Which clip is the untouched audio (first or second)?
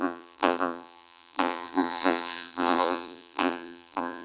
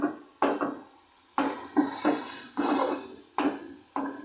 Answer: second